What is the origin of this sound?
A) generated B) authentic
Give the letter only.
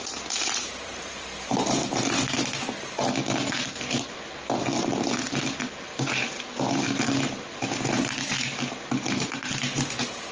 B